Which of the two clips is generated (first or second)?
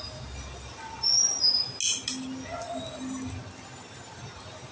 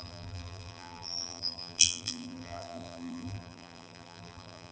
second